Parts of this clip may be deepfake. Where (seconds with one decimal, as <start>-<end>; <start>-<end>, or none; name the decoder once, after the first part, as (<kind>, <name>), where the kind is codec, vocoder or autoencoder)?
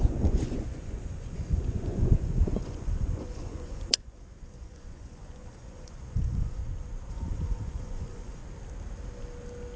0.0-6.6 (vocoder, Vocos); 7.1-8.4